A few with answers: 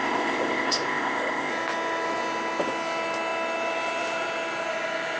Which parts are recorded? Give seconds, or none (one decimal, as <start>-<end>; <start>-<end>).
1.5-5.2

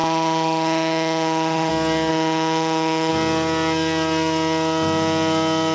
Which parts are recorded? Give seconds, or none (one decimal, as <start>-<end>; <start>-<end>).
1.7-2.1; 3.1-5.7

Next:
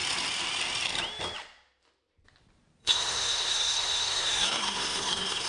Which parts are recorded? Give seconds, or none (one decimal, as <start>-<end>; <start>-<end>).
0.0-2.8

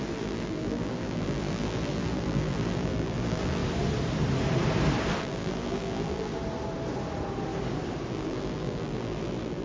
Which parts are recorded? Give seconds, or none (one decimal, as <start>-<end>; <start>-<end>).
3.6-5.2; 6.3-8.1

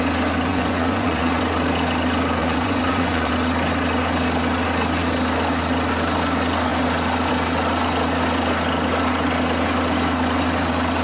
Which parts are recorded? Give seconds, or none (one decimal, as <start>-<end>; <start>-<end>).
0.0-0.5; 1.4-2.4; 3.3-11.0